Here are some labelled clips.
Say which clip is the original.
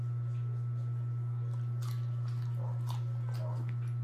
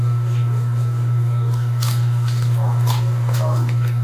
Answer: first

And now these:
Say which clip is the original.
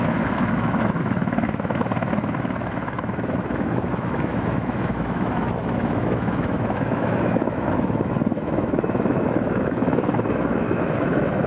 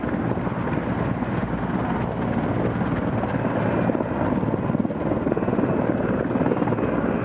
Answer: second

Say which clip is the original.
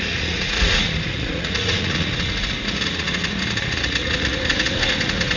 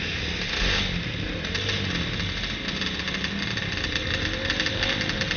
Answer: second